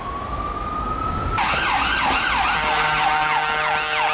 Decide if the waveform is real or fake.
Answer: real